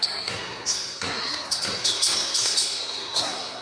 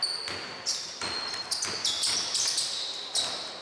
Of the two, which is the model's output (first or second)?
first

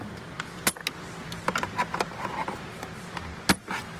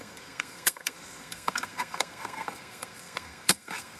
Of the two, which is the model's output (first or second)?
second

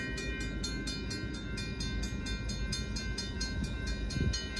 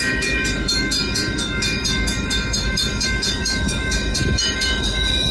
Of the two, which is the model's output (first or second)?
second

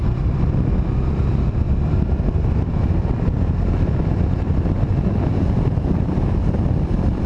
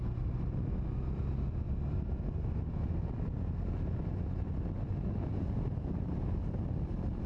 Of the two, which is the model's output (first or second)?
first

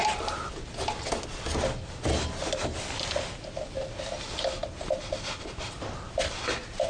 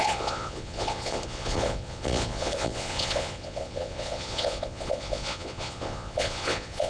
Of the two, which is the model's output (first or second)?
second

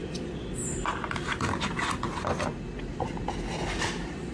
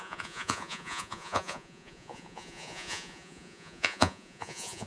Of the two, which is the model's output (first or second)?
second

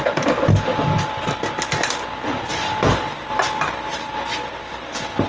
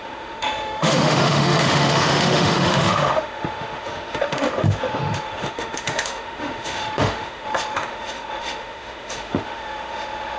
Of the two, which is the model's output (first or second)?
second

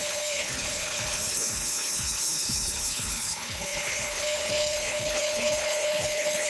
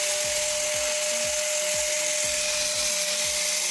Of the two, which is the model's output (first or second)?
first